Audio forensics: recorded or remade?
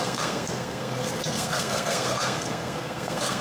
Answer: remade